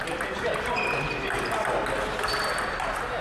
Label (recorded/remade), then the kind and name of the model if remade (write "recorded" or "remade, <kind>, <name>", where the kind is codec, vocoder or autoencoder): recorded